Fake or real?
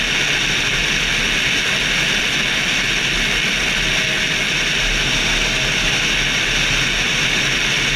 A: real